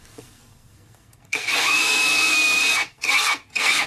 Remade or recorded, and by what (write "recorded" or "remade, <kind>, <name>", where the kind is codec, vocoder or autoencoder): remade, codec, SNAC